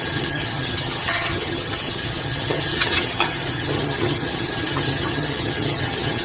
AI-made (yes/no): yes